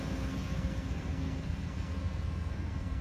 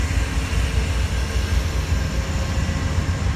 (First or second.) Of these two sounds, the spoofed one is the first